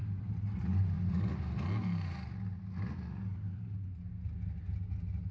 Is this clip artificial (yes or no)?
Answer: no